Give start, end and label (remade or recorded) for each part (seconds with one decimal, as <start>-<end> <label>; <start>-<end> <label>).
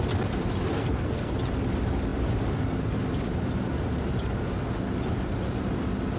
0.0-0.8 recorded; 0.8-1.3 remade; 1.3-6.2 recorded